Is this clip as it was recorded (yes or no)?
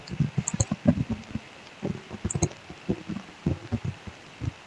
yes